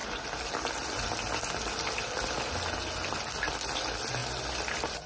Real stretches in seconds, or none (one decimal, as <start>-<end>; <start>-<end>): 0.0-5.1